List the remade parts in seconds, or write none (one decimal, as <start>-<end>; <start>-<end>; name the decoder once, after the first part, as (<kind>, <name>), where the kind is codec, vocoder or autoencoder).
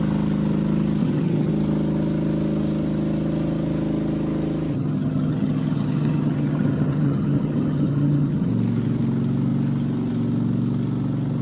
1.0-1.5 (vocoder, HiFi-GAN); 4.7-8.5